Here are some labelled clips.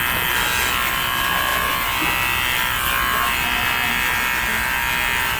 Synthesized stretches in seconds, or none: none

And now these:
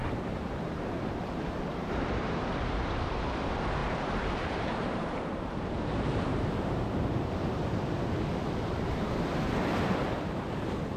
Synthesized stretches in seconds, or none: 0.0-1.2 (vocoder, BigVGAN v2); 1.7-2.5; 3.8-7.7

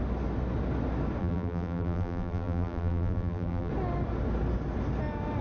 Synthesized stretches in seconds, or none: 1.2-3.7 (vocoder, BigVGAN v2)

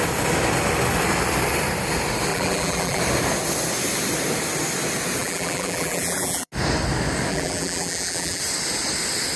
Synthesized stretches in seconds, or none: 2.3-3.0 (vocoder, BigVGAN v2); 5.2-6.5; 7.3-8.4

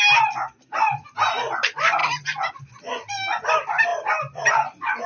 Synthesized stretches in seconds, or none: 2.0-3.1 (vocoder, BigVGAN v2); 3.9-4.5

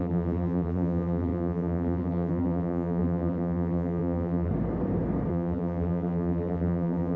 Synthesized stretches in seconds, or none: 0.0-4.5 (vocoder, BigVGAN v2); 5.3-7.2